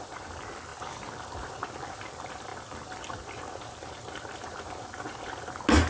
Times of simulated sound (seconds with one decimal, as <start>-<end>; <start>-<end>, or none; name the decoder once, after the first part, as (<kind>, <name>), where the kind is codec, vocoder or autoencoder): none